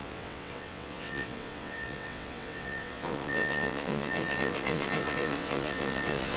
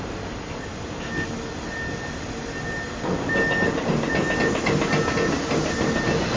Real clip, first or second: second